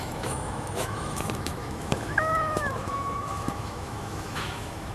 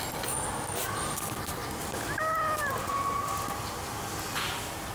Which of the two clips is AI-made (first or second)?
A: first